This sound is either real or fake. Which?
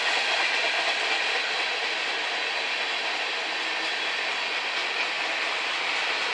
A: real